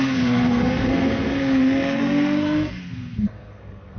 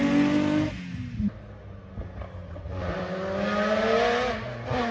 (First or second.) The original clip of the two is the second